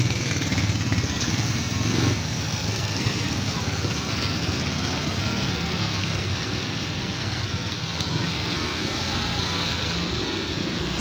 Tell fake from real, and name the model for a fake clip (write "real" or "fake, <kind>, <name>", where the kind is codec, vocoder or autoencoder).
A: fake, codec, SNAC